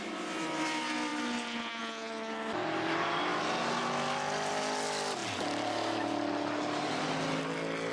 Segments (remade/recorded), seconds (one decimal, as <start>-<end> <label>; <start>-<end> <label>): 0.0-7.9 recorded